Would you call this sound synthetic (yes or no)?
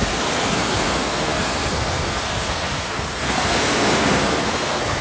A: yes